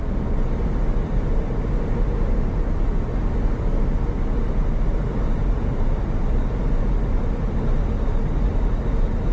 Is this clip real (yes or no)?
yes